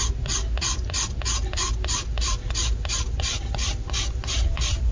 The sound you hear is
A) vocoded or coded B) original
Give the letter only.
B